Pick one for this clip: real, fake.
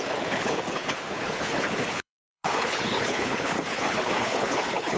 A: fake